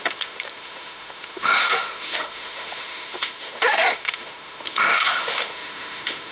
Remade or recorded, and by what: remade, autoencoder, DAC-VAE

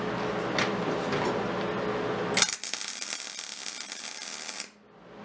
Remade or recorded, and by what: recorded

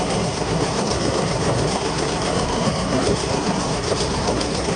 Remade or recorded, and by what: remade, codec, SNAC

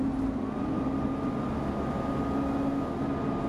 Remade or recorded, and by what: recorded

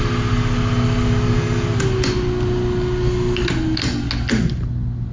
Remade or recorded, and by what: recorded